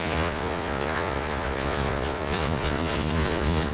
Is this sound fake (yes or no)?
yes